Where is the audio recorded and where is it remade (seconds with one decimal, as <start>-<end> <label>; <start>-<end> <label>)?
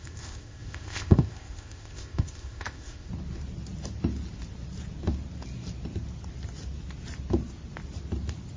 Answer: 0.0-3.1 remade; 3.1-8.6 recorded